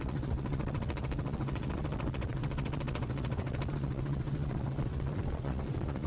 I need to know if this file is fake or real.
fake